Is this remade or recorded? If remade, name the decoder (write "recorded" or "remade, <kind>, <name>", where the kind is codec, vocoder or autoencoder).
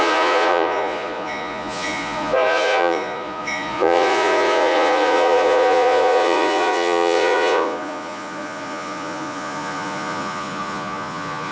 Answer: remade, vocoder, Vocos